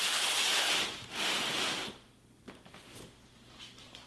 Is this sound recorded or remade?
recorded